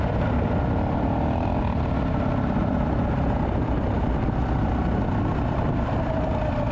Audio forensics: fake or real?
real